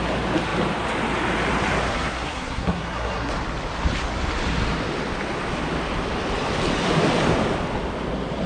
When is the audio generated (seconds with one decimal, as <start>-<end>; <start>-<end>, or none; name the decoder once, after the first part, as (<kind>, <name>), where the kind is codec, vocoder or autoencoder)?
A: 1.9-3.3 (codec, SNAC)